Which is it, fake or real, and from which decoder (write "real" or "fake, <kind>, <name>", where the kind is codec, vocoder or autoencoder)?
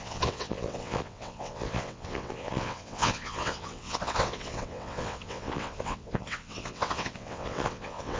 fake, vocoder, WaveNeXt